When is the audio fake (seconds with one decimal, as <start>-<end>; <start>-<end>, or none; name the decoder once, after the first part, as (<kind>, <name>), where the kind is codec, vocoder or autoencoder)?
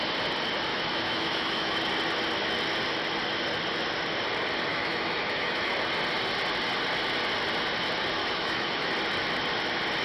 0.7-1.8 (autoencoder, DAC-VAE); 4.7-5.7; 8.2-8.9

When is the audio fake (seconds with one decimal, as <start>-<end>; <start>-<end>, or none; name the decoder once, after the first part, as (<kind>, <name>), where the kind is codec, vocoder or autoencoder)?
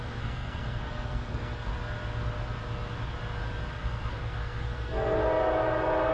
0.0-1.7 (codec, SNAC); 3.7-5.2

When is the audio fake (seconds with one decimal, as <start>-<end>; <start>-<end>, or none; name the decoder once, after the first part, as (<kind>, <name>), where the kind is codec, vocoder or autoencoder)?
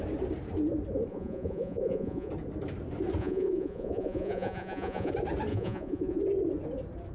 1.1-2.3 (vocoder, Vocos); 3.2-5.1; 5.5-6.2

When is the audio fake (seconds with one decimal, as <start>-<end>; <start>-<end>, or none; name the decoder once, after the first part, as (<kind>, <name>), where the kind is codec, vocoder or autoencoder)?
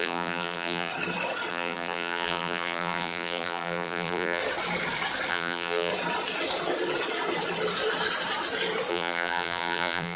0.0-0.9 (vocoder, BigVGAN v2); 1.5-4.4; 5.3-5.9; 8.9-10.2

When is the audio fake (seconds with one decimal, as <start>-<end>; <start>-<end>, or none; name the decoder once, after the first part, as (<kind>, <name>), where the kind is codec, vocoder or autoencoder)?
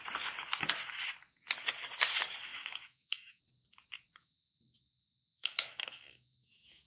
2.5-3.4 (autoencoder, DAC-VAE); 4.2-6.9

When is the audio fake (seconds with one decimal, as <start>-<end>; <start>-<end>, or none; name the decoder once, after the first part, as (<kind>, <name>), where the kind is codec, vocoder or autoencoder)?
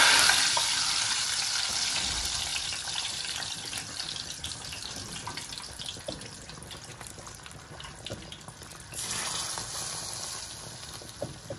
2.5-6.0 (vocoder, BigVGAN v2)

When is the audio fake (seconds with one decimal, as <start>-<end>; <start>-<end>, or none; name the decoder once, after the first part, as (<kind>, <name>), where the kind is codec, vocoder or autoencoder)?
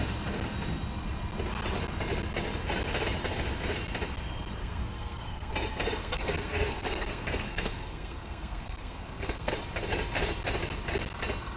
4.6-5.5 (codec, SNAC); 6.0-9.5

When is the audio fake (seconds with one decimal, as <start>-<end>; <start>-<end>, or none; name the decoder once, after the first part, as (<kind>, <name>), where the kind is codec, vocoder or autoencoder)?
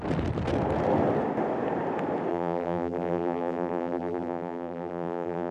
2.3-5.5 (vocoder, BigVGAN v2)